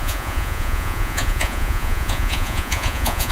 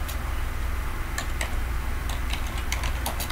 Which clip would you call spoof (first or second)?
first